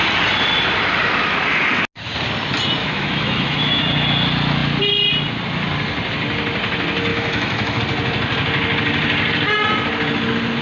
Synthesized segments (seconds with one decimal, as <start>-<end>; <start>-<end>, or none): 2.8-3.8; 7.1-7.8